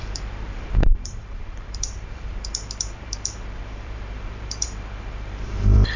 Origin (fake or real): fake